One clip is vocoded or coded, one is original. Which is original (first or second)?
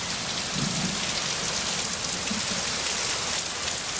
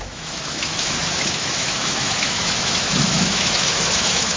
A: first